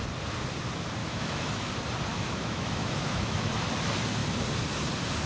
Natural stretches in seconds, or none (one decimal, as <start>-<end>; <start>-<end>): 0.0-1.0; 1.7-2.1; 3.5-5.3